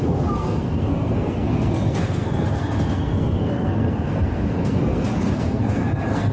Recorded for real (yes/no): no